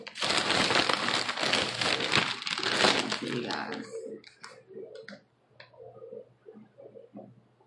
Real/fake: real